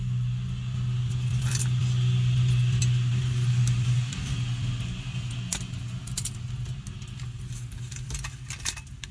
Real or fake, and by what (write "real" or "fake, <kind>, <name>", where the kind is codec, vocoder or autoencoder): real